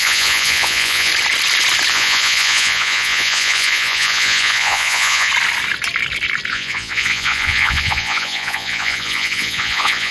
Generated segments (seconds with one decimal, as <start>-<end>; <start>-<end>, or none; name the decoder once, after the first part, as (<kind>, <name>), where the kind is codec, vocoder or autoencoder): 0.0-1.1 (vocoder, Vocos); 1.9-5.3; 6.5-10.1